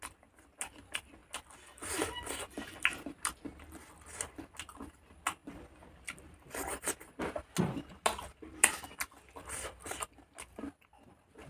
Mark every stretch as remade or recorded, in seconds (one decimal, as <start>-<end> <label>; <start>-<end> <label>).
0.0-11.5 recorded